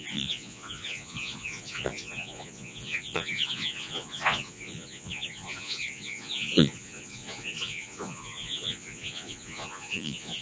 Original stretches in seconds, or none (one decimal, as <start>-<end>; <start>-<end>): none